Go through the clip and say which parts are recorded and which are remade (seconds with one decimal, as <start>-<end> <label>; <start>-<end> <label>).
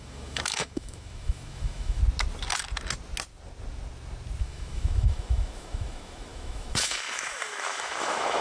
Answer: 0.0-2.0 remade; 2.0-4.4 recorded; 4.4-8.4 remade